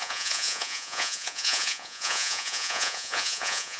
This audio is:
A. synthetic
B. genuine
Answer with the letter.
A